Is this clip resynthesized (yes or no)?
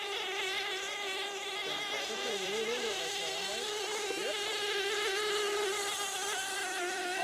yes